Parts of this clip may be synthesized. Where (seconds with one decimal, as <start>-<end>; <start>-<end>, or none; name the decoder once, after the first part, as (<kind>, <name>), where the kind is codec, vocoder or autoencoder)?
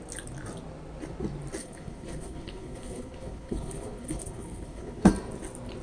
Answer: 1.6-5.1 (codec, HILCodec)